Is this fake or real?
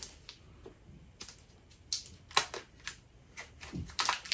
real